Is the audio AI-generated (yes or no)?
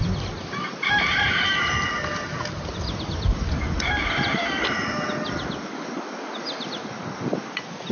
no